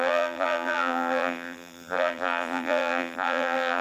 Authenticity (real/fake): fake